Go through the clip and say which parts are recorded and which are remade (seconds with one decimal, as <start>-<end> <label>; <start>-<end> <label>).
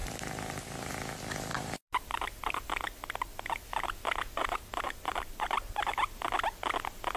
0.0-0.9 remade; 0.9-1.5 recorded; 1.5-2.7 remade; 2.7-4.4 recorded; 4.4-5.6 remade; 5.6-7.2 recorded